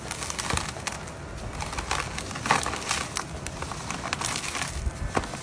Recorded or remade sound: recorded